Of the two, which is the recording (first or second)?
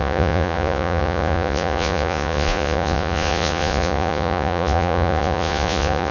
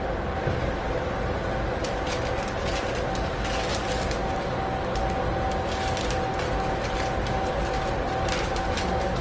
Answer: second